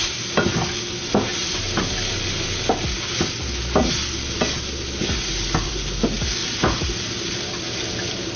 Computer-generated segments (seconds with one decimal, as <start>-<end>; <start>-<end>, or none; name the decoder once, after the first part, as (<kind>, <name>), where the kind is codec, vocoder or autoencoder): 1.3-1.9 (vocoder, BigVGAN v2); 6.4-7.3